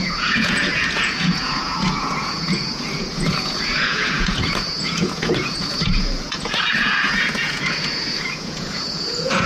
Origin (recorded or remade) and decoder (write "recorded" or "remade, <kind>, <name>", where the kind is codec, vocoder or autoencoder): remade, vocoder, Vocos